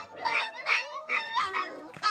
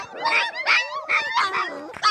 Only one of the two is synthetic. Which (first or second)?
first